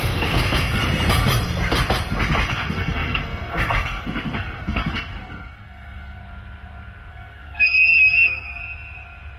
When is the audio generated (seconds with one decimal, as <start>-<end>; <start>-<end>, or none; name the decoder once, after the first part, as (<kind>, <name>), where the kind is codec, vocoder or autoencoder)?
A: 0.0-0.8 (codec, SNAC); 2.5-6.2; 7.1-8.6